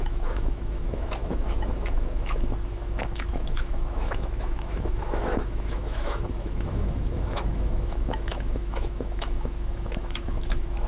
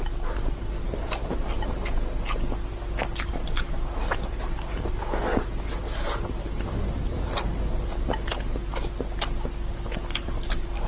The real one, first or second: second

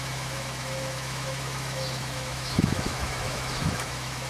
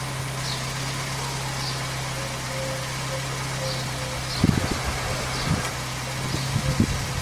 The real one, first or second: second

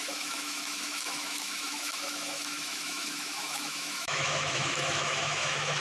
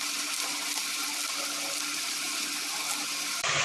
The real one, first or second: second